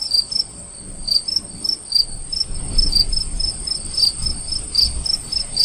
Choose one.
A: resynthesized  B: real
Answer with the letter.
B